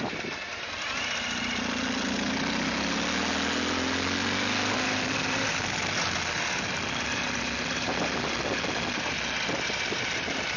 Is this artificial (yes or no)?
no